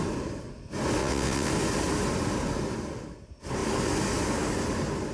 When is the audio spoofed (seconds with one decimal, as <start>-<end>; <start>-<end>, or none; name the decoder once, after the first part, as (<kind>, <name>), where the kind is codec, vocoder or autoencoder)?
1.0-1.5 (vocoder, WaveNeXt)